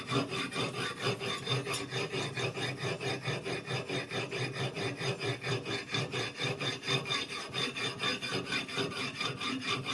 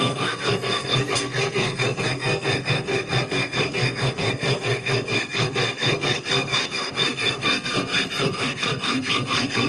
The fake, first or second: second